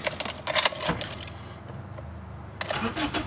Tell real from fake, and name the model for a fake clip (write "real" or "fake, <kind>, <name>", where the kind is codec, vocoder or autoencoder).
real